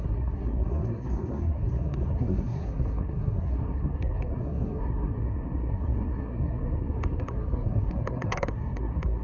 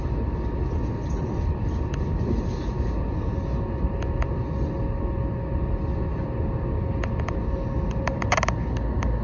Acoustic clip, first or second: second